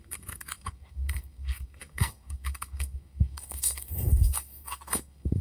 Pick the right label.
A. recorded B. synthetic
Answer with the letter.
B